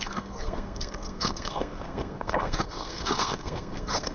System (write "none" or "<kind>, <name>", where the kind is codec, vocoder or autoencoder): codec, SNAC